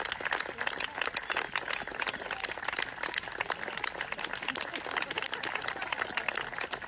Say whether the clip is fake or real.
real